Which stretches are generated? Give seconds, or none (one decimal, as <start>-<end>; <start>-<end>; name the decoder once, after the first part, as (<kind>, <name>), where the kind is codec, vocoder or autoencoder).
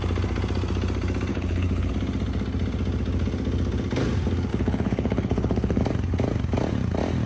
1.3-1.9 (codec, HILCodec); 4.5-5.8